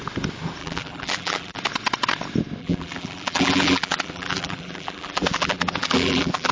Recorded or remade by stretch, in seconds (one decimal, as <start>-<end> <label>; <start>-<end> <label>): 0.0-0.6 recorded; 0.6-1.6 remade; 1.6-2.6 recorded; 2.6-6.5 remade